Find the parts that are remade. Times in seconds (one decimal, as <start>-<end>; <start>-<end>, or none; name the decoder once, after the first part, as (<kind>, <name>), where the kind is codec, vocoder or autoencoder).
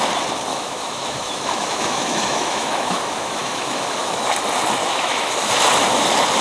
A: 0.5-4.3 (autoencoder, DAC-VAE); 4.8-5.5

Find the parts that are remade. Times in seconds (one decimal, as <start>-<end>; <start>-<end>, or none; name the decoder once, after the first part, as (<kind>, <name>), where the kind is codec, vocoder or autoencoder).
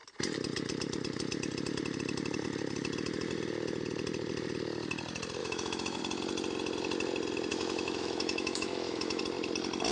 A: 5.4-6.0 (autoencoder, DAC-VAE); 7.5-9.2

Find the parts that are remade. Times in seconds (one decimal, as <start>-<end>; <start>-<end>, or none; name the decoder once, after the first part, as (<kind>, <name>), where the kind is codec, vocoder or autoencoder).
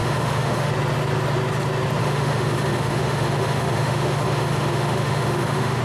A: 0.0-0.7 (autoencoder, DAC-VAE); 2.0-5.8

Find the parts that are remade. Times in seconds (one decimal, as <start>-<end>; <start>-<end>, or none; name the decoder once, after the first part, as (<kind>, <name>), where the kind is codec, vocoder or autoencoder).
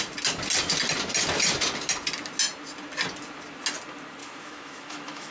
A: 4.2-5.3 (autoencoder, DAC-VAE)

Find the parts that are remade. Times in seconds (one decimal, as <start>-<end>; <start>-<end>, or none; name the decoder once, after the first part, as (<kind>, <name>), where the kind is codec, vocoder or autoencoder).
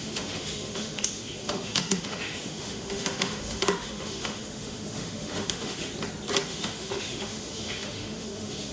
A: 0.0-5.9 (autoencoder, DAC-VAE); 6.5-8.7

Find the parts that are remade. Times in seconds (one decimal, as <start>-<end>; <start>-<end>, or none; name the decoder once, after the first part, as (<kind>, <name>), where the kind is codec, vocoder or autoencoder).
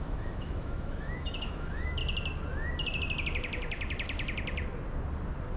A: 0.0-2.0 (autoencoder, DAC-VAE)